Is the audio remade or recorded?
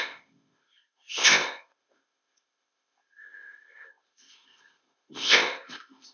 remade